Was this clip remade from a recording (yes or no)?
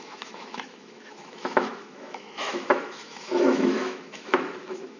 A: yes